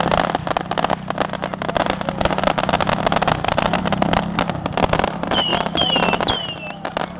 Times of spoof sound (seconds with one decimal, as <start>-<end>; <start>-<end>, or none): none